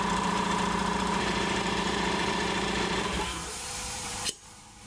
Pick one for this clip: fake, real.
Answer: fake